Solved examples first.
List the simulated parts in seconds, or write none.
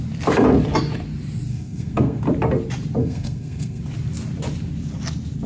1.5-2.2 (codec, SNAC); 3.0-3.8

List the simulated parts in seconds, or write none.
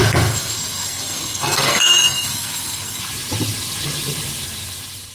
0.0-3.0 (codec, SNAC)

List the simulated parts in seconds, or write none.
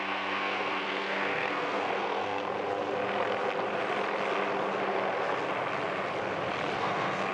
0.0-2.4 (codec, SNAC); 6.8-7.3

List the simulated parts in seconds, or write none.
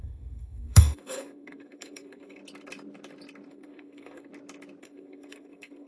0.0-2.4 (codec, SNAC); 3.5-4.3; 4.8-5.9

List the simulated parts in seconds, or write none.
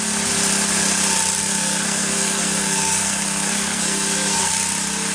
1.4-4.5 (codec, SNAC)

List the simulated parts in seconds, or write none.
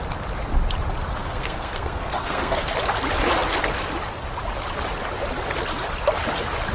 1.2-2.7 (codec, SNAC)